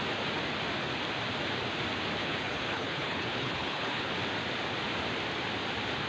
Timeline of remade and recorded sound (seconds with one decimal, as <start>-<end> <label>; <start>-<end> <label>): 0.0-2.2 recorded; 2.2-4.1 remade; 4.1-6.1 recorded